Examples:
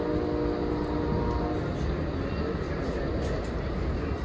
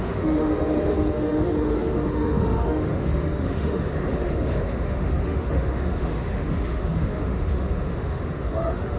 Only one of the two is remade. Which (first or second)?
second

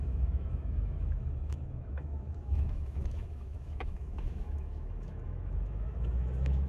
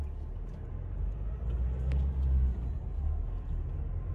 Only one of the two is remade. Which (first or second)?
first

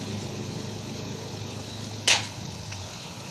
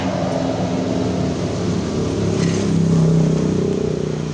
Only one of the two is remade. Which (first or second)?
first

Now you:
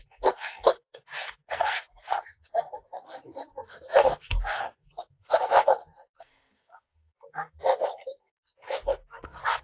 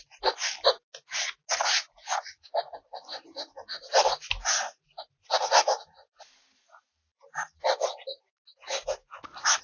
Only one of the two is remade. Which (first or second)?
first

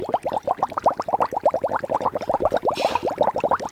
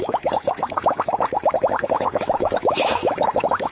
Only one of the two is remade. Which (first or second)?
second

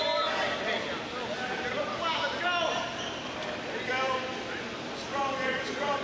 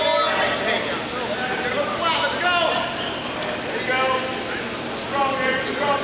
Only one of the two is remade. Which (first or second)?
first